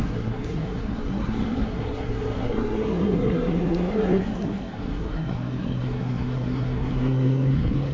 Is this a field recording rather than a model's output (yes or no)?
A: no